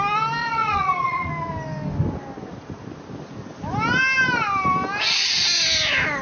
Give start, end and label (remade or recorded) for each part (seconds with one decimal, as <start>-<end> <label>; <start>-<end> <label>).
0.0-0.4 recorded; 0.4-1.3 remade; 1.3-6.2 recorded